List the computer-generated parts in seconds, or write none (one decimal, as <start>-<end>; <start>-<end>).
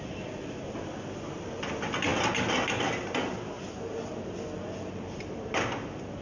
none